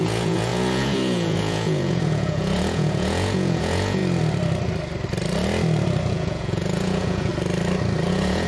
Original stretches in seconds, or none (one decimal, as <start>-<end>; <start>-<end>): 4.0-6.1; 7.3-8.1